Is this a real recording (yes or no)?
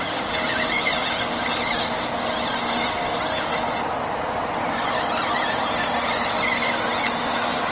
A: yes